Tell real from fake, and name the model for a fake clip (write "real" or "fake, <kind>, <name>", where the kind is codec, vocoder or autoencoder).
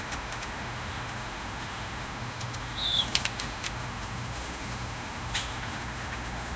fake, autoencoder, DAC-VAE